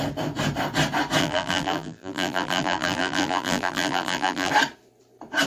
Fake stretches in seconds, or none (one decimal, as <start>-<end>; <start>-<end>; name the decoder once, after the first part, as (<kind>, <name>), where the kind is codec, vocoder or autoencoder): 1.2-4.5 (vocoder, BigVGAN v2)